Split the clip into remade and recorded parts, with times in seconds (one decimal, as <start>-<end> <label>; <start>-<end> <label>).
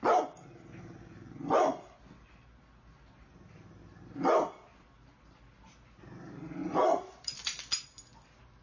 0.0-6.6 recorded; 6.6-7.6 remade; 7.6-8.6 recorded